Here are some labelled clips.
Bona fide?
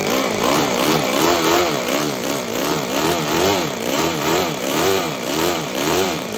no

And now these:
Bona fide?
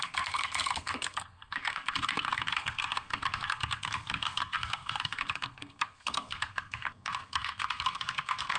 no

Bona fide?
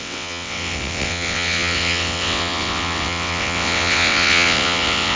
no